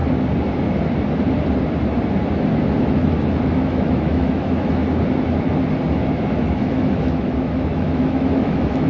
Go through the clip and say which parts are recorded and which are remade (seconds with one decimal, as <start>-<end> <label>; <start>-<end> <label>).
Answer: 0.0-2.8 recorded; 2.8-4.8 remade; 4.8-6.3 recorded; 6.3-8.9 remade